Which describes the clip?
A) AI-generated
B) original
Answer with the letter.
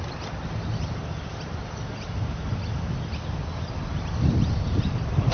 B